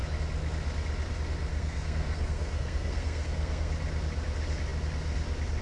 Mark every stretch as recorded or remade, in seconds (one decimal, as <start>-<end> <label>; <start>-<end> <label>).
0.0-1.5 recorded; 1.5-3.7 remade; 3.7-5.6 recorded